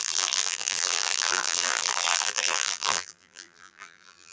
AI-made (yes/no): yes